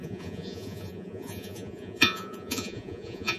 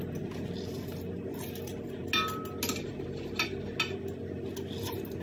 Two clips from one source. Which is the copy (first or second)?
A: first